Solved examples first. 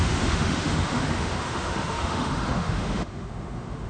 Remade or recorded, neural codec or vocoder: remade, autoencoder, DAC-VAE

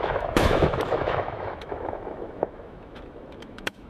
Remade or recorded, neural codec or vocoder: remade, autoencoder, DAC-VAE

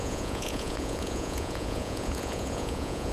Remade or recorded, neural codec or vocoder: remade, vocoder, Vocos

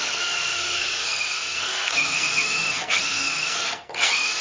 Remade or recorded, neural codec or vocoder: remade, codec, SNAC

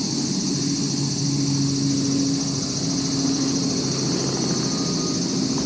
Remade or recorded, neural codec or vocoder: recorded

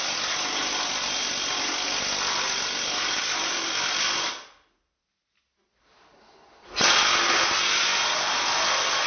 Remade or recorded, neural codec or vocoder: recorded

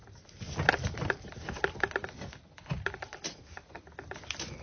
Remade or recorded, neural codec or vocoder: recorded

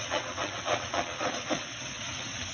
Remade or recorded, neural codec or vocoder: remade, vocoder, WaveNeXt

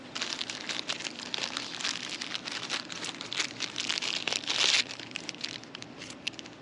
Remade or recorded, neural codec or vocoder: recorded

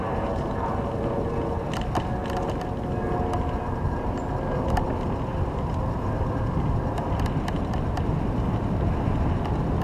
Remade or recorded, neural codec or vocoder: recorded